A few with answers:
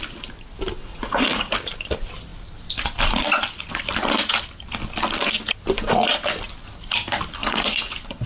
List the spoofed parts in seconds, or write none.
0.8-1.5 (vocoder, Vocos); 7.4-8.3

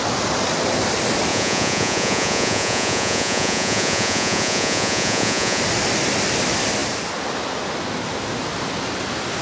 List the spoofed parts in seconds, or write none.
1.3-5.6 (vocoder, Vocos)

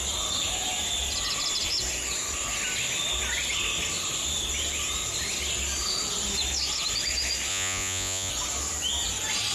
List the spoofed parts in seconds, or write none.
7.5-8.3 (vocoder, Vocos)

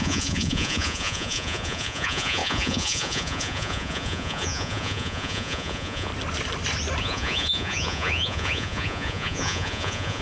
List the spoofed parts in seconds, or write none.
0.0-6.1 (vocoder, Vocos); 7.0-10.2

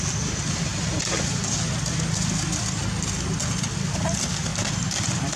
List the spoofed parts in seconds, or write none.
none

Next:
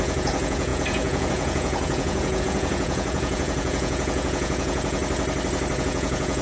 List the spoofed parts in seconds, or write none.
0.0-5.0 (vocoder, Vocos); 5.8-6.4